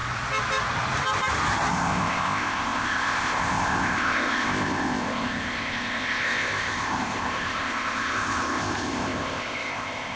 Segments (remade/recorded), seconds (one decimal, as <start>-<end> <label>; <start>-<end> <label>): 0.0-1.7 recorded; 1.7-10.2 remade